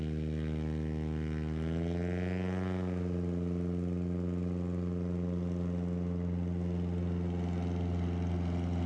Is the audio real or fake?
real